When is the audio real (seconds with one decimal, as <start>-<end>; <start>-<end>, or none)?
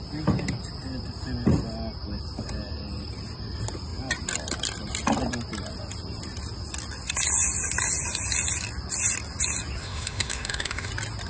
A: 0.0-9.8; 10.9-11.3